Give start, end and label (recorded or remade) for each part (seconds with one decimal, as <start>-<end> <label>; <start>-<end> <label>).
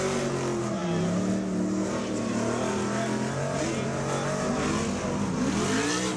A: 0.0-6.2 recorded